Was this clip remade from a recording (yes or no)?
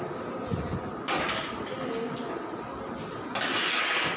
no